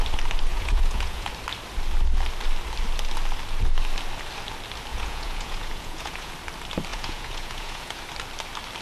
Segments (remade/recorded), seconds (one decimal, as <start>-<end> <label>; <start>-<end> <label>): 0.0-0.5 recorded; 0.5-1.3 remade; 1.3-4.9 recorded; 4.9-6.3 remade; 6.3-6.9 recorded; 6.9-8.0 remade; 8.0-8.8 recorded